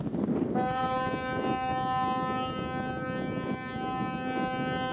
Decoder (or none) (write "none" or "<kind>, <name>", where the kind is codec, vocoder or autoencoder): none